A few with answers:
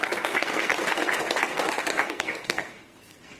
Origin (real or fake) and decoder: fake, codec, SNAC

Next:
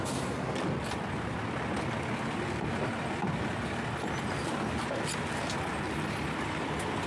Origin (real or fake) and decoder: real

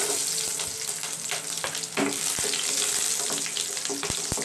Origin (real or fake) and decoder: real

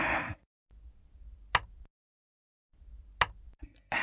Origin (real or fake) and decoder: real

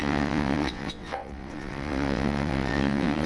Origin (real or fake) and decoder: fake, vocoder, WaveNeXt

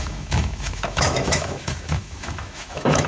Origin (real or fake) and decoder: fake, autoencoder, DAC-VAE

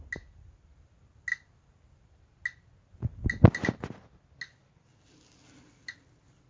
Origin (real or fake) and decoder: real